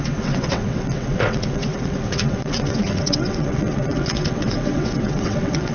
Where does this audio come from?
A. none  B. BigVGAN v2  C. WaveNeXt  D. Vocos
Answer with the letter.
C